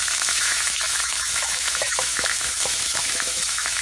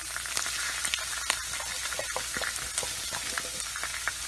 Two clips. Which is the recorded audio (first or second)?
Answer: second